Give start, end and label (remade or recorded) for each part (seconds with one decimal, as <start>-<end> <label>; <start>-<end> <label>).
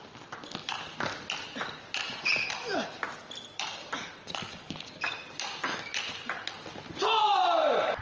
0.0-2.5 recorded; 2.5-5.9 remade; 5.9-6.9 recorded; 6.9-8.0 remade